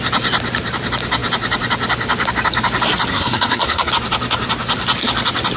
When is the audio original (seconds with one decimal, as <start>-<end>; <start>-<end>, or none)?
0.0-3.1; 3.9-5.6